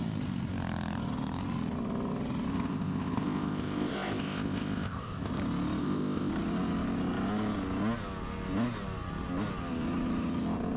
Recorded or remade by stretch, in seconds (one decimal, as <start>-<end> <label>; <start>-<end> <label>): 0.0-2.5 recorded; 2.5-5.3 remade; 5.3-5.8 recorded; 5.8-6.3 remade; 6.3-10.8 recorded

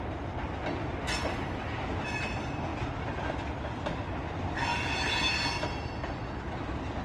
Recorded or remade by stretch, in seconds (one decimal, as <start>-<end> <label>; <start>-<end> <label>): 0.0-7.0 recorded

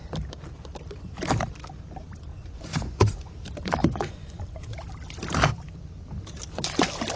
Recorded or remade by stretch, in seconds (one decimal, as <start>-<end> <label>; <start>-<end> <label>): 0.0-2.3 recorded; 2.3-3.3 remade; 3.3-3.8 recorded; 3.8-4.4 remade; 4.4-7.2 recorded

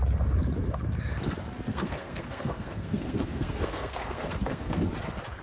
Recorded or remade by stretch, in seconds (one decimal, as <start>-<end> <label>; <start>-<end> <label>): 0.0-1.7 recorded; 1.7-4.9 remade; 4.9-5.4 recorded

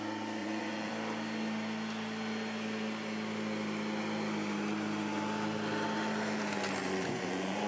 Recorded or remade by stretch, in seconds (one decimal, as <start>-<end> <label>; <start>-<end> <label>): 0.0-0.4 recorded; 0.4-0.9 remade; 0.9-6.8 recorded; 6.8-7.7 remade

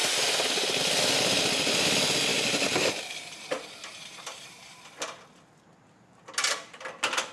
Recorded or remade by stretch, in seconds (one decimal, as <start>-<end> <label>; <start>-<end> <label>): 0.0-2.3 recorded; 2.3-4.8 remade; 4.8-7.3 recorded

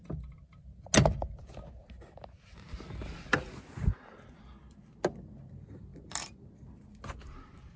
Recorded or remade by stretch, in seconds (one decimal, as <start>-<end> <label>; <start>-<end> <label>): 0.0-7.8 recorded

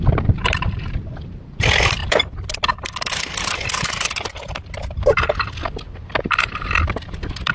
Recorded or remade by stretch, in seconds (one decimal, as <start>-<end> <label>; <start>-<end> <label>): 0.0-2.0 recorded; 2.0-5.6 remade; 5.6-7.5 recorded